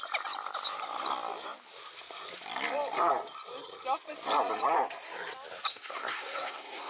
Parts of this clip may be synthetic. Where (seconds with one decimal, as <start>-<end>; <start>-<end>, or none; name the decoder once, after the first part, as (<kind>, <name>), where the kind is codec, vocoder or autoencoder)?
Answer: 5.7-6.9 (codec, SNAC)